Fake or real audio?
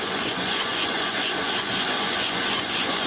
fake